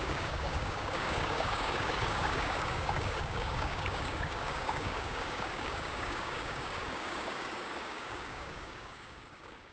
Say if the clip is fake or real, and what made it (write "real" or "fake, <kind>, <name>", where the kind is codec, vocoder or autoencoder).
fake, codec, DAC